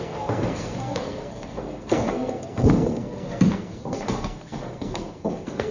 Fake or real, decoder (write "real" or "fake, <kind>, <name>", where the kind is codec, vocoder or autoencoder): fake, codec, SNAC